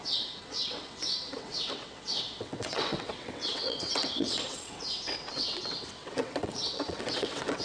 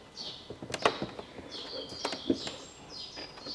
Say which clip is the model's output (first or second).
first